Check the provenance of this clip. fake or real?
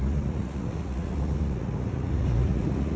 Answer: fake